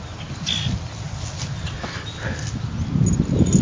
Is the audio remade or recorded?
recorded